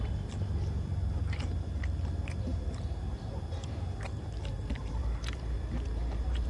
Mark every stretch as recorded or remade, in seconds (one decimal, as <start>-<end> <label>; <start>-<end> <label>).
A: 0.0-1.2 recorded; 1.2-1.8 remade; 1.8-2.5 recorded; 2.5-6.5 remade

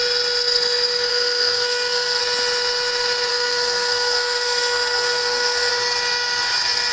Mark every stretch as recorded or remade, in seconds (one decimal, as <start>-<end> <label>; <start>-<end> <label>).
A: 0.0-1.1 recorded; 1.1-2.2 remade; 2.2-3.3 recorded; 3.3-5.7 remade; 5.7-6.9 recorded

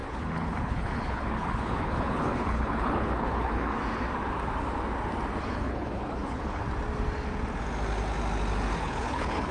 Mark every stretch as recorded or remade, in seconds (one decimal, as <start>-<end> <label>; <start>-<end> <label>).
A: 0.0-3.7 remade; 3.7-5.4 recorded; 5.4-6.6 remade; 6.6-8.8 recorded; 8.8-9.5 remade

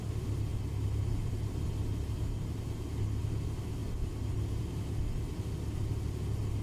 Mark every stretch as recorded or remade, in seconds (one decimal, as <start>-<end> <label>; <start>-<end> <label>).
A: 0.0-6.6 recorded